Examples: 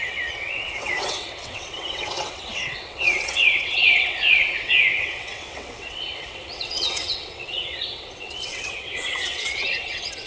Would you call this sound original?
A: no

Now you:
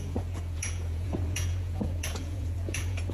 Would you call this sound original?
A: no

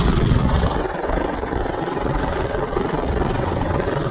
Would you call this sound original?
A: no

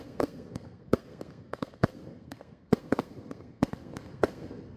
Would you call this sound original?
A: no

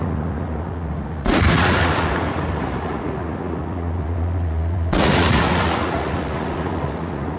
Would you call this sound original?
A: no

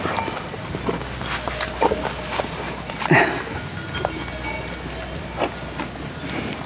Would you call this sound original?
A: yes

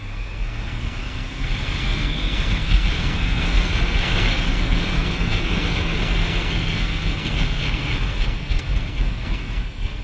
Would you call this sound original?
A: no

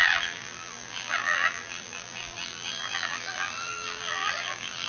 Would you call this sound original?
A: no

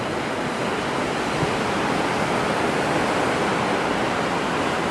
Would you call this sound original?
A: yes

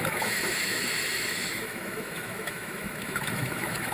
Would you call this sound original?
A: no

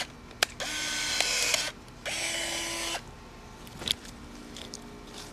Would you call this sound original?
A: yes